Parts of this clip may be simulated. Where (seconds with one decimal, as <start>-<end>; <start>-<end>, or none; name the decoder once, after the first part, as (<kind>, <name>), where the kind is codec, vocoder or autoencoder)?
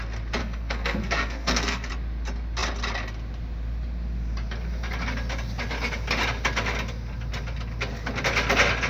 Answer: 0.4-1.9 (codec, SNAC)